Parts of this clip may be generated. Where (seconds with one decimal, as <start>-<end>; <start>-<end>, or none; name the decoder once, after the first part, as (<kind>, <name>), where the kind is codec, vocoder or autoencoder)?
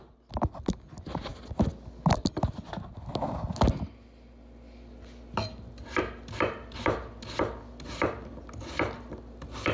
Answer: none